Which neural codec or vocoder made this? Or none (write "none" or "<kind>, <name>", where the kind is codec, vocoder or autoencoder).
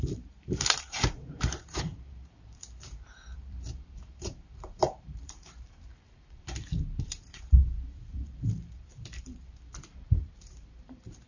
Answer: vocoder, BigVGAN v2